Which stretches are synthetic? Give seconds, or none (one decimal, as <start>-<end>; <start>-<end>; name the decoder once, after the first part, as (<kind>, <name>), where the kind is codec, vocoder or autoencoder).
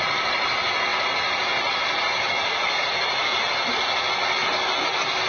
none